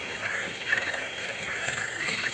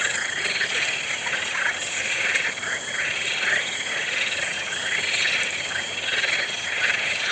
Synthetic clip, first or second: first